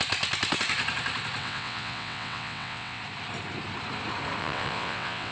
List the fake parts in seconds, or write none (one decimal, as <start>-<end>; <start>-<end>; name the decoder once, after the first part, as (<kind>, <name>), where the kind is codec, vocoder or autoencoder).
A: 1.4-3.0 (vocoder, WaveNeXt); 4.4-5.3